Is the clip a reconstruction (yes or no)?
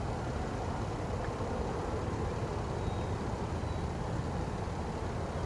no